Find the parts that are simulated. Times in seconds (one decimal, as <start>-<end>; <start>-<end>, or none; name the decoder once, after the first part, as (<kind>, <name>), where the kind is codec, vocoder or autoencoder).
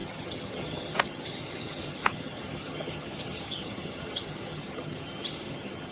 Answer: 0.0-5.9 (vocoder, HiFi-GAN)